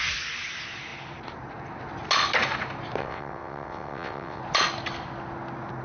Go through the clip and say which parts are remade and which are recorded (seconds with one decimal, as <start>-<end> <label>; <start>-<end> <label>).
0.0-3.0 recorded; 3.0-4.4 remade; 4.4-5.8 recorded